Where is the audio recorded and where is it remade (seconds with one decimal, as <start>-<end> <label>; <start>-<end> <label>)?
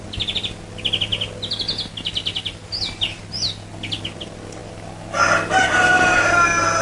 0.0-6.8 recorded